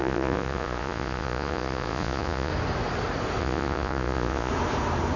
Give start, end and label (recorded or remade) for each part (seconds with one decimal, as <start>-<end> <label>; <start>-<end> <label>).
0.0-2.5 remade; 2.5-3.4 recorded; 3.4-4.5 remade; 4.5-5.2 recorded